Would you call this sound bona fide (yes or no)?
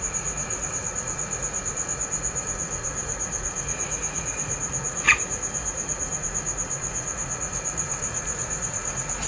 no